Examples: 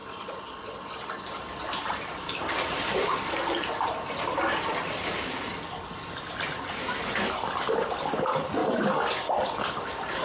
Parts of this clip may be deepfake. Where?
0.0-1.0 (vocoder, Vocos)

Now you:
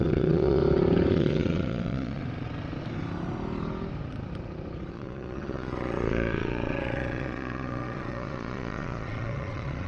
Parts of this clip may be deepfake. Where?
0.0-0.6 (vocoder, Vocos); 1.1-2.2; 4.9-9.9

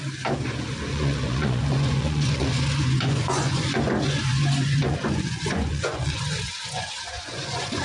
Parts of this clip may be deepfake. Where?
0.7-7.8 (vocoder, Vocos)

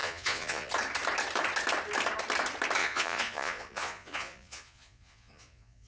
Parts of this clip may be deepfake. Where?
0.0-0.7 (vocoder, Vocos); 2.8-5.9

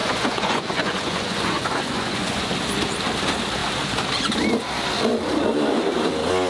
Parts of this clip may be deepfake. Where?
0.0-2.5 (vocoder, Vocos)